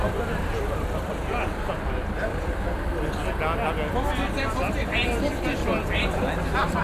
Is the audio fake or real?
real